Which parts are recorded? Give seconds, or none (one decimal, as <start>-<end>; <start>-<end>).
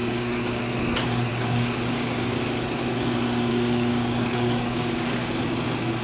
0.6-1.3; 2.4-3.5; 5.3-6.0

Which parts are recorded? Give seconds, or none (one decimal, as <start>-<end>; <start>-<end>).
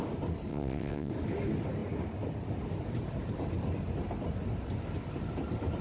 0.0-0.5; 1.1-5.8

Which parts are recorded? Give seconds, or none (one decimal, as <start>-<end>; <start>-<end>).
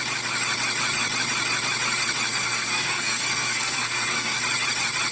0.0-2.3; 4.4-5.1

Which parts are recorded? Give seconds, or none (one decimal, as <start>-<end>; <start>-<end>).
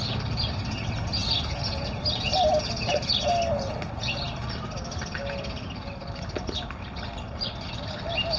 0.0-8.4